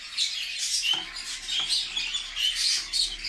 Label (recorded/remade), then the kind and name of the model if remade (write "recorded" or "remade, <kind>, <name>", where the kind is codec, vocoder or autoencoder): recorded